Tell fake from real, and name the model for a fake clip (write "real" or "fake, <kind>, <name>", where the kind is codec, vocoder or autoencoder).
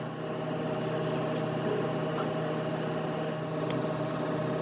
real